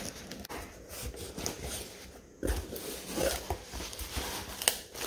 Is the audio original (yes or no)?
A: yes